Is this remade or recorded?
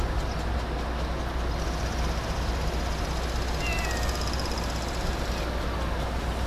recorded